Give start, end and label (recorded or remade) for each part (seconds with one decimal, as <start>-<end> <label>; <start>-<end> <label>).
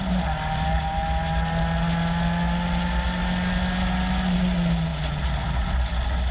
0.0-6.3 recorded